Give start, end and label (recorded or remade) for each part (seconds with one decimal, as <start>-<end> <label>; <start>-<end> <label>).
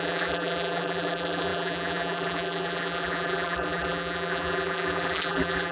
0.0-5.7 remade